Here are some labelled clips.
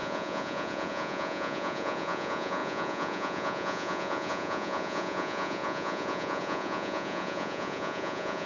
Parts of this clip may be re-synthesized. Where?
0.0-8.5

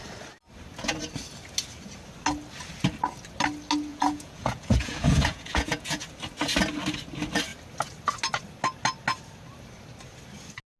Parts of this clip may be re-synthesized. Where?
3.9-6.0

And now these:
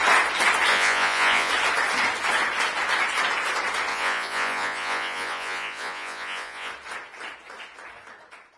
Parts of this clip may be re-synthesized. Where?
0.7-1.5; 3.9-6.7